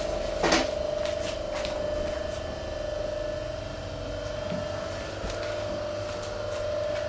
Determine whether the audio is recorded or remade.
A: recorded